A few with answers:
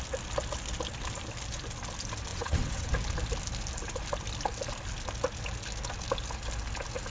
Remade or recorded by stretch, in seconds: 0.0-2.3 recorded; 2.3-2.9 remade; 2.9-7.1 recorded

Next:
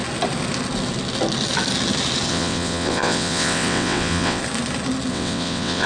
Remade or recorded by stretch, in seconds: 0.0-2.3 recorded; 2.3-4.4 remade; 4.4-5.1 recorded; 5.1-5.9 remade

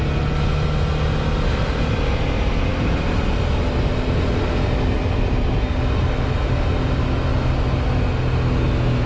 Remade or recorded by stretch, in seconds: 0.0-9.1 recorded

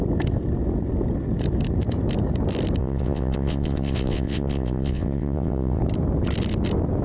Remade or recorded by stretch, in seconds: 0.0-2.8 recorded; 2.8-5.8 remade; 5.8-7.0 recorded

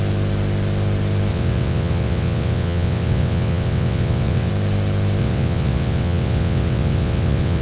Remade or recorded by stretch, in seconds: 0.0-1.3 recorded; 1.3-4.5 remade; 4.5-5.2 recorded; 5.2-7.6 remade

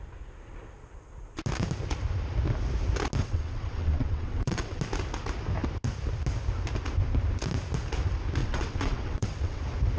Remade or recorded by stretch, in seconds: 0.0-3.2 recorded; 3.2-4.8 remade; 4.8-8.4 recorded; 8.4-9.6 remade; 9.6-10.0 recorded

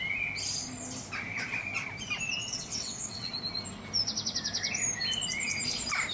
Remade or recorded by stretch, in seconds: 0.0-2.4 recorded; 2.4-3.3 remade; 3.3-6.1 recorded

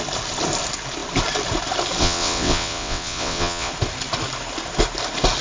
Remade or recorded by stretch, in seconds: 0.0-2.0 recorded; 2.0-3.7 remade; 3.7-5.4 recorded